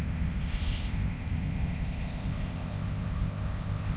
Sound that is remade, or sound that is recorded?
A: remade